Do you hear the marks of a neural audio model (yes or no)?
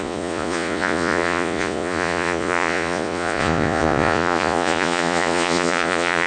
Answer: yes